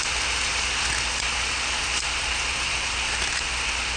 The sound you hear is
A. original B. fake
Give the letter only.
A